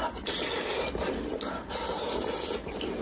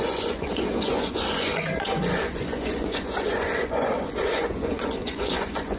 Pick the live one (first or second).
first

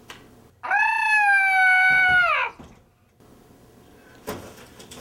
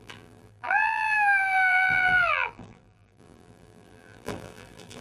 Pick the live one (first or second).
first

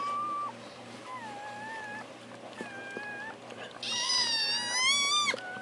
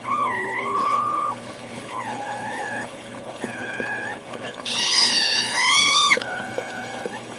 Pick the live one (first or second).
first